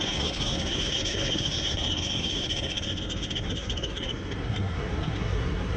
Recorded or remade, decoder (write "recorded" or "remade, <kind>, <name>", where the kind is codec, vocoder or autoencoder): remade, codec, SNAC